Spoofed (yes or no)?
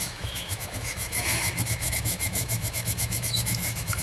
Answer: yes